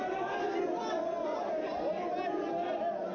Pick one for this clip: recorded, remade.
recorded